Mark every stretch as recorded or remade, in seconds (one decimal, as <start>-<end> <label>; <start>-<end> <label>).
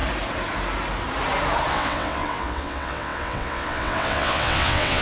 0.0-1.7 recorded; 1.7-5.0 remade